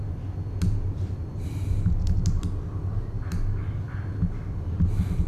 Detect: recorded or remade recorded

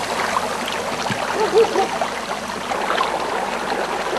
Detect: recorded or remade recorded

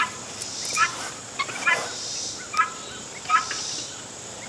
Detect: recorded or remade recorded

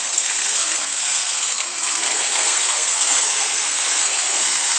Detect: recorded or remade remade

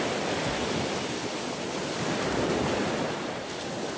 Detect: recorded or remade recorded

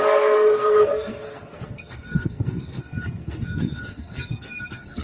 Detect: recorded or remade remade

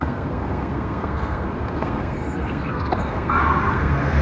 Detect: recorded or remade remade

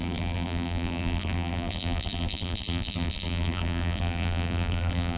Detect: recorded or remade remade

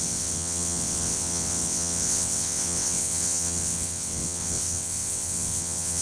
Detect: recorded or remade remade